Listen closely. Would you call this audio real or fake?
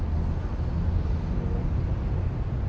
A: real